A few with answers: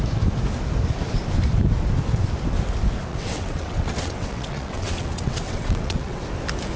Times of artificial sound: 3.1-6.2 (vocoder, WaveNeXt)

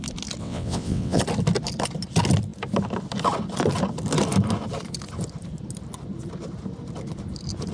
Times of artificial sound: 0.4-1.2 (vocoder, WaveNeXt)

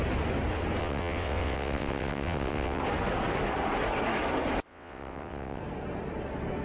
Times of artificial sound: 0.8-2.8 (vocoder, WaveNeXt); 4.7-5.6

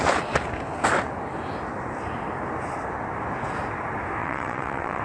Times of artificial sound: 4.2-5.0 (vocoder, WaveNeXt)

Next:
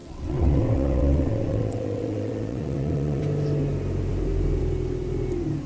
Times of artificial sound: 0.0-3.2 (vocoder, WaveNeXt)